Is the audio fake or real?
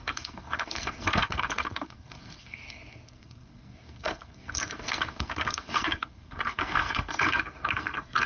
fake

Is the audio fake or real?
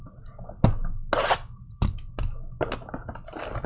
real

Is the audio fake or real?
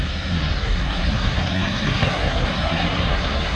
fake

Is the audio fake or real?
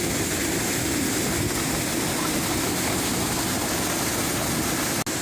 real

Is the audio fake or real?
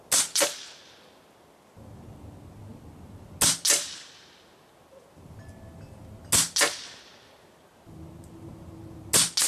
real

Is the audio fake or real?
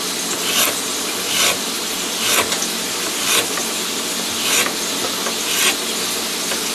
real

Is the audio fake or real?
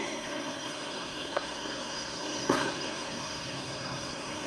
fake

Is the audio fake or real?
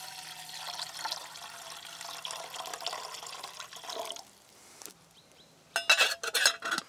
real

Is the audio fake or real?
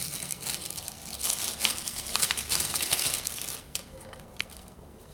fake